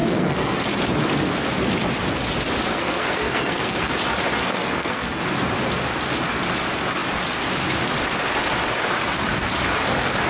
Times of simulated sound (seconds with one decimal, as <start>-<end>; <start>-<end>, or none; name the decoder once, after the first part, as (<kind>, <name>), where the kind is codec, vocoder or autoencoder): 0.0-0.6 (codec, SNAC); 2.7-3.9; 4.4-5.2